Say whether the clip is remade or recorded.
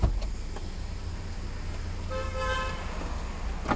recorded